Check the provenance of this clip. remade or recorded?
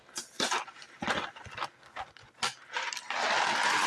recorded